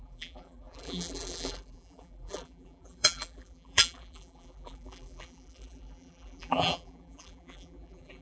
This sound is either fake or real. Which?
fake